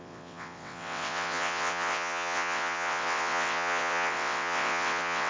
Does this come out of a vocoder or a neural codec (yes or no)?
yes